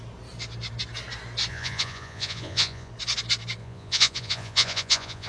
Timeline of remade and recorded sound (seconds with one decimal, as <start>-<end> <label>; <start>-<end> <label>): 0.0-1.5 recorded; 1.5-2.9 remade; 2.9-3.6 recorded; 3.6-5.3 remade